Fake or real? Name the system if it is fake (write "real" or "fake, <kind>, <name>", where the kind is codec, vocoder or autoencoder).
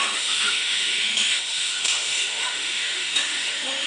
fake, autoencoder, DAC-VAE